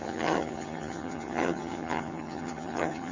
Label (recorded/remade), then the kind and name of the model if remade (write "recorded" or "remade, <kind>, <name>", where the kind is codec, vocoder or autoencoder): remade, vocoder, HiFi-GAN